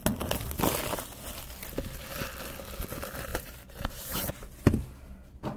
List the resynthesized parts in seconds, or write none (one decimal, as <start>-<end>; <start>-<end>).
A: 3.3-4.3